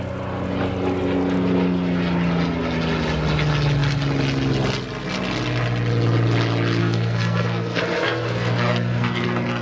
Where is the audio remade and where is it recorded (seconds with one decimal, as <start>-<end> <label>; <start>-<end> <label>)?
0.0-6.8 recorded; 6.8-9.6 remade